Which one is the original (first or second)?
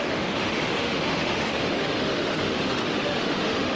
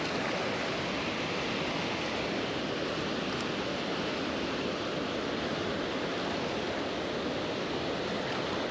second